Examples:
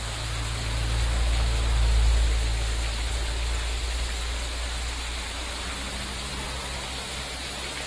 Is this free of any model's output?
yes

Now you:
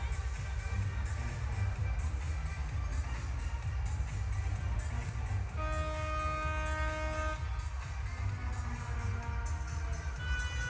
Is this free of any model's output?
yes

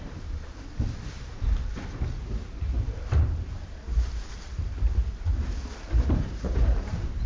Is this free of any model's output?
no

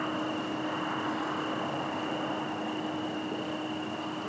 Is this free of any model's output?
yes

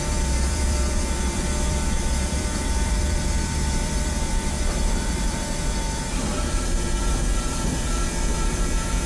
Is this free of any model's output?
no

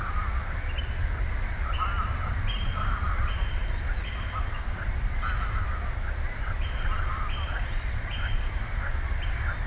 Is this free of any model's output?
yes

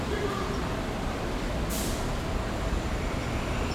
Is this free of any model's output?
no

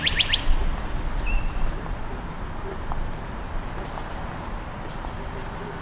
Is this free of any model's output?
no